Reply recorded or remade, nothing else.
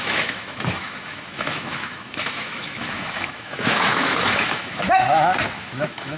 remade